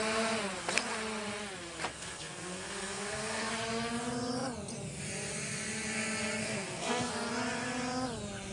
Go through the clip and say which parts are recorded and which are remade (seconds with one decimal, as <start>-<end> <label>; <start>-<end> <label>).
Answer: 0.0-1.9 recorded; 1.9-3.5 remade; 3.5-6.4 recorded; 6.4-7.1 remade; 7.1-8.5 recorded